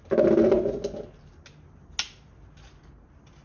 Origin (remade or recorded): recorded